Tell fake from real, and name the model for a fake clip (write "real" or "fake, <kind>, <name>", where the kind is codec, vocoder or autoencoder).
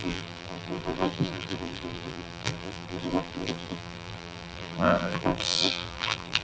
fake, vocoder, BigVGAN v2